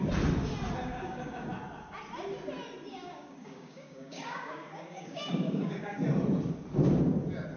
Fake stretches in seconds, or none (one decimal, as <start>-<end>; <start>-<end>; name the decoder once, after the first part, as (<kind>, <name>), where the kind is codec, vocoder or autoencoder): 0.8-1.5 (codec, DAC); 2.9-6.0